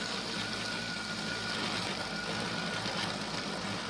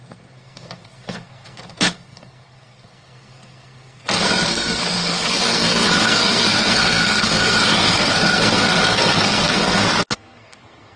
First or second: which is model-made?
second